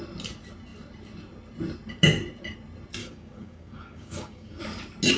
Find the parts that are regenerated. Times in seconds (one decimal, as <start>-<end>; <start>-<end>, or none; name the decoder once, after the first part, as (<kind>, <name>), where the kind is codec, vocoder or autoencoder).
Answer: 3.0-4.6 (codec, DAC)